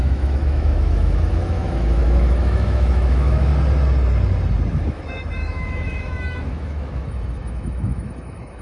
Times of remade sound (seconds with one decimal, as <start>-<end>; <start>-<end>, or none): 0.0-3.5; 4.7-8.6